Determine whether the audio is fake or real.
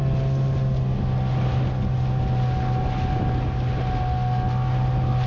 real